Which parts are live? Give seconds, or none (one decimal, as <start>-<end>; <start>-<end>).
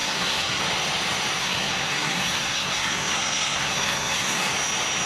0.6-1.4; 4.5-5.1